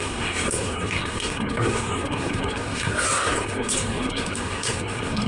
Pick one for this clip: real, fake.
fake